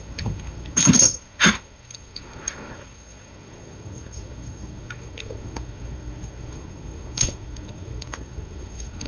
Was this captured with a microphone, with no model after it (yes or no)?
no